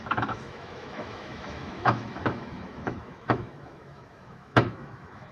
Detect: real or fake fake